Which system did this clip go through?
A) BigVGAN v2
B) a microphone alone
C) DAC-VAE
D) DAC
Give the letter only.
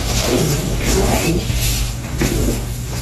D